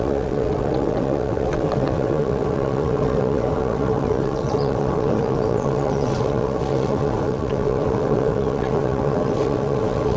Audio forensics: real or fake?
fake